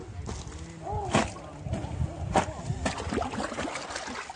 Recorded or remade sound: recorded